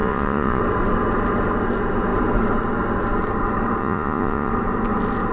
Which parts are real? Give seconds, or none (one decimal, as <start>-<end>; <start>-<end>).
0.6-3.8; 4.5-5.3